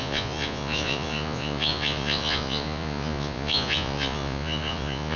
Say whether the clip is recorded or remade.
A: remade